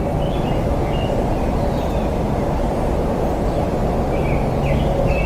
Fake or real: real